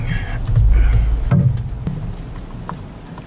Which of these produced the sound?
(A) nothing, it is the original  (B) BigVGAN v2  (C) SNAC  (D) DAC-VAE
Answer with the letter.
A